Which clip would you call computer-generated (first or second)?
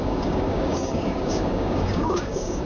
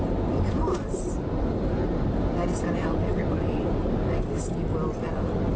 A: first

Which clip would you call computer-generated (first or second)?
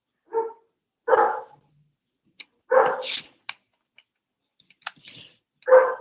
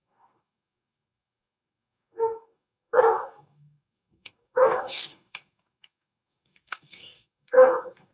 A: second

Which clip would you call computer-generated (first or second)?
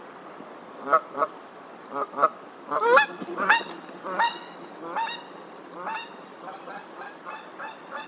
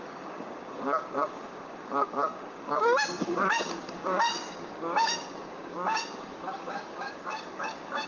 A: second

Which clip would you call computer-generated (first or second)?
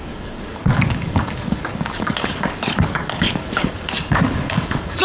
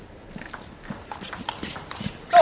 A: first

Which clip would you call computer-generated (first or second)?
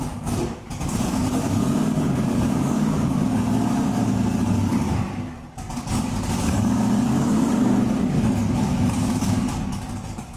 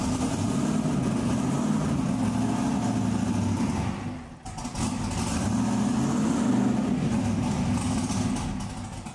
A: first